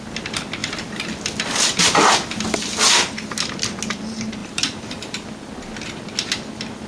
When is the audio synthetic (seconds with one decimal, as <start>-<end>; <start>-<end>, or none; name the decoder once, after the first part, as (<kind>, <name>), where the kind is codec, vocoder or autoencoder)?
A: 4.4-5.3 (vocoder, BigVGAN v2)

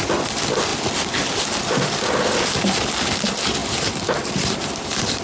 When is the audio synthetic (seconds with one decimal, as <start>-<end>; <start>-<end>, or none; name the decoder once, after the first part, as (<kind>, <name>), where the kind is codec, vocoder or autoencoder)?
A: 3.6-5.2 (vocoder, BigVGAN v2)

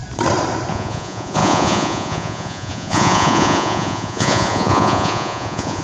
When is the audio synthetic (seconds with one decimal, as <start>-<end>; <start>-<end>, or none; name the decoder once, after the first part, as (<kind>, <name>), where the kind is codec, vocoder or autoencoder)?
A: 0.7-5.8 (vocoder, Vocos)

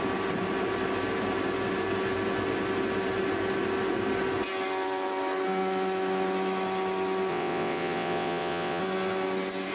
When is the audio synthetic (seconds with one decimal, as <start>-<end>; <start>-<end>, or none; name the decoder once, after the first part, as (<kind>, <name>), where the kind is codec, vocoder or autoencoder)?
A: 7.3-8.8 (vocoder, WaveNeXt)

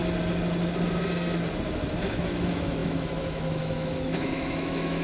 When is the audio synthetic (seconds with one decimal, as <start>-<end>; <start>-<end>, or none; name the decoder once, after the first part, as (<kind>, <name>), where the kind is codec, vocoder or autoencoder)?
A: 2.0-5.0 (autoencoder, DAC-VAE)

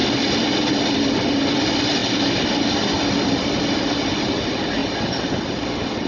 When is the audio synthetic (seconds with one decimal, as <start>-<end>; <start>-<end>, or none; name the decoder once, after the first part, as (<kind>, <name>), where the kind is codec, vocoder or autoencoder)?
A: 1.3-6.1 (vocoder, BigVGAN v2)

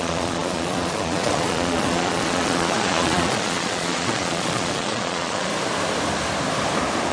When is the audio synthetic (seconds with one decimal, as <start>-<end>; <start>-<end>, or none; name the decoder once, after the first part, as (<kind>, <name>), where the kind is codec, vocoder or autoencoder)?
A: 0.0-5.5 (vocoder, Vocos)